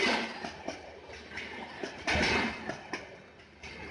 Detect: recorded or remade recorded